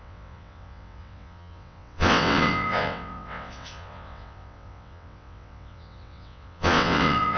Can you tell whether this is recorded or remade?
remade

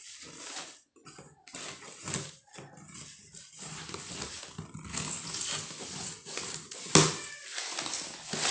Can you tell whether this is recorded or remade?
recorded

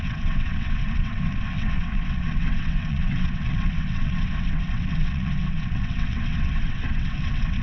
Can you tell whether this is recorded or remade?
remade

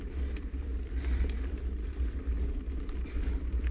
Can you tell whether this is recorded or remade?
recorded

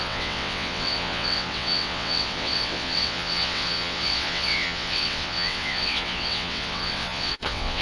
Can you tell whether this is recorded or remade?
remade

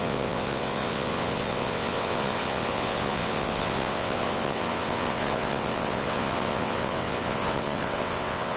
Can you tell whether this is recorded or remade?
remade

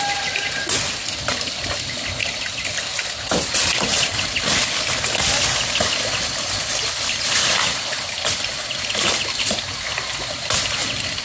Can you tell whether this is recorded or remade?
recorded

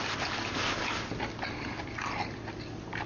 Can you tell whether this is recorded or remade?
recorded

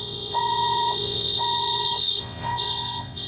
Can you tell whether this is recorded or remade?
remade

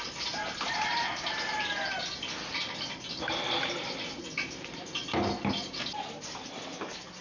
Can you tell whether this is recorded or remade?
recorded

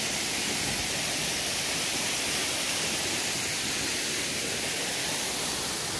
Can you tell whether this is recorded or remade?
recorded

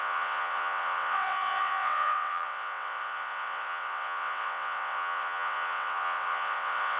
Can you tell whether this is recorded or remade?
remade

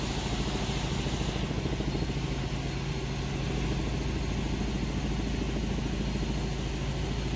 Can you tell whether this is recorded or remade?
recorded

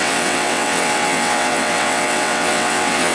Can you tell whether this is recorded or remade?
remade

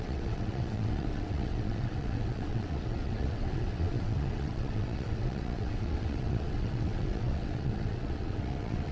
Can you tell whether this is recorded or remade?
remade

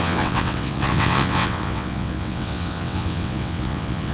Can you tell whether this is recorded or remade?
remade